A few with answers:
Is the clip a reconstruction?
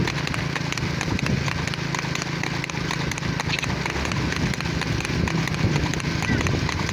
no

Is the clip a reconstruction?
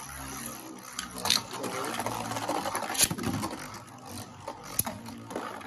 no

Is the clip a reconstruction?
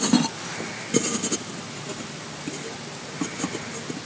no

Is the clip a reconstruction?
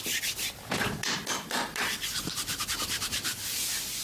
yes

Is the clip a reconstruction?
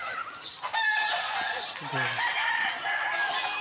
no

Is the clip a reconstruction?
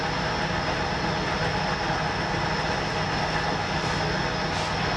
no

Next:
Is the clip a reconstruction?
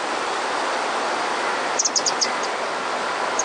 no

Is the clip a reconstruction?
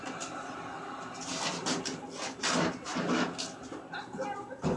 no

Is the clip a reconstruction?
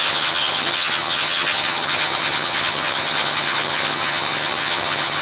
yes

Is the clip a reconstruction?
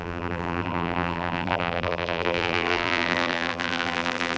yes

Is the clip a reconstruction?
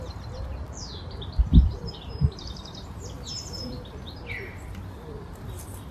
yes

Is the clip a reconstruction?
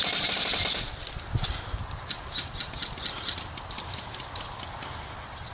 no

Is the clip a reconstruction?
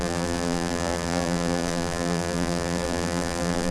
yes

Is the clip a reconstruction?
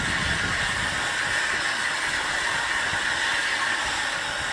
no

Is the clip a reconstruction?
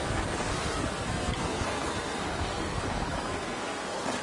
yes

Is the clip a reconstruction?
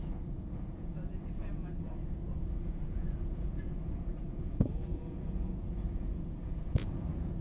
yes